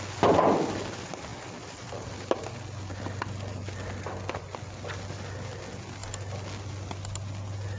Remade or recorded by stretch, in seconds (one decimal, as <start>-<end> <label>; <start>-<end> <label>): 0.0-7.8 recorded